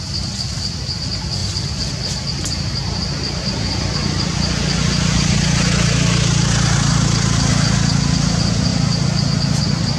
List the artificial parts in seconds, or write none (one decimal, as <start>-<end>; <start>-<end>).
1.4-5.6